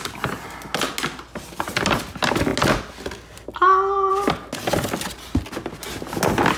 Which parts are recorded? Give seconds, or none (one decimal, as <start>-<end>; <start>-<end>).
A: 0.0-6.6